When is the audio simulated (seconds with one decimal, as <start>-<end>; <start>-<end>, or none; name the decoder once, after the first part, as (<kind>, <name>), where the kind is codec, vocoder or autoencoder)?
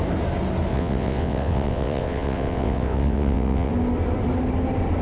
0.7-3.7 (vocoder, WaveNeXt)